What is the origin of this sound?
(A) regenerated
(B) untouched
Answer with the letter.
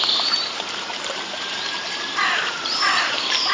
A